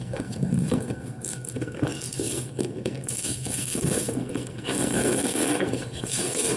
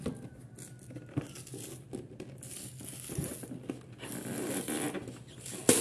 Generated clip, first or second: first